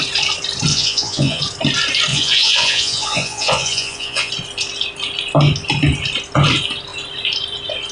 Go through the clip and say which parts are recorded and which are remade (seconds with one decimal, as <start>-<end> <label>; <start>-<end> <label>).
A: 0.0-0.7 recorded; 0.7-1.4 remade; 1.4-2.1 recorded; 2.1-4.3 remade; 4.3-7.9 recorded